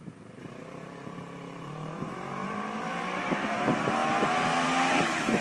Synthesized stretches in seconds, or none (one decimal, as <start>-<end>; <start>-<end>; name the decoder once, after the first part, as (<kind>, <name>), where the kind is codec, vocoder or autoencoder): 0.0-4.0 (vocoder, BigVGAN v2); 5.0-5.4